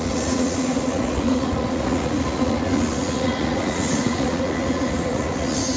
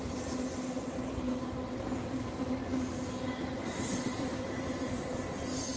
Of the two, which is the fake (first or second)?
first